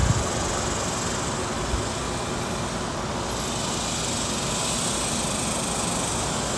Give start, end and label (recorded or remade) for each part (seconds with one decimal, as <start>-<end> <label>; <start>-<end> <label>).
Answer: 0.0-6.6 recorded